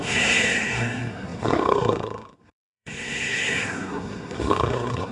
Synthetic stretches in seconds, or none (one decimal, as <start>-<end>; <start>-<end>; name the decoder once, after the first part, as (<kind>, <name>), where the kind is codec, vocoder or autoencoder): 0.0-5.1 (codec, SNAC)